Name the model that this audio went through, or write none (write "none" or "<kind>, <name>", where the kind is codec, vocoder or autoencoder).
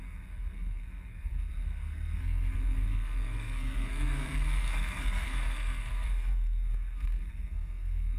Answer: codec, SNAC